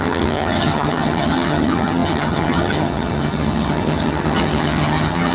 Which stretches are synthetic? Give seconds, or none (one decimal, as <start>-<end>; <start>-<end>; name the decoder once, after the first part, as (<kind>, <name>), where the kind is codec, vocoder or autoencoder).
0.0-5.3 (vocoder, HiFi-GAN)